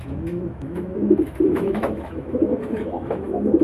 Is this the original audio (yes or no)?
no